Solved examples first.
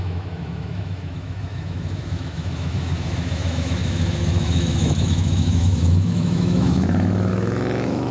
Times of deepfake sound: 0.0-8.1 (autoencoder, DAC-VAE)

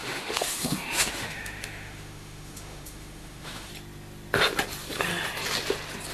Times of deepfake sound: 0.0-3.7 (autoencoder, DAC-VAE)

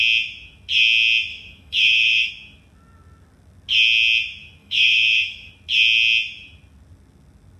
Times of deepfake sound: 1.3-2.3 (autoencoder, DAC-VAE); 4.6-5.5